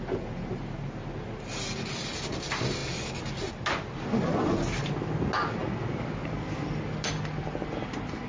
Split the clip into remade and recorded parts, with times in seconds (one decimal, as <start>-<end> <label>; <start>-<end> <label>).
0.0-8.3 recorded